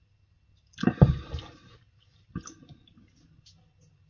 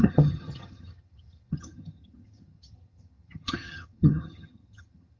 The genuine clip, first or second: first